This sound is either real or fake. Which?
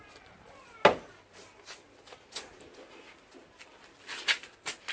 real